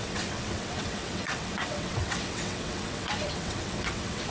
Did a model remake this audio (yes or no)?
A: yes